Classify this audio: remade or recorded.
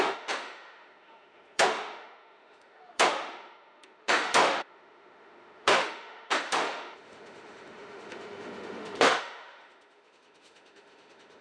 remade